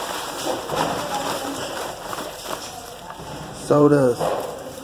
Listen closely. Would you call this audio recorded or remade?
remade